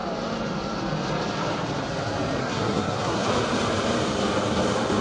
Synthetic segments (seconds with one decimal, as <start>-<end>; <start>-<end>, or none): 2.4-3.3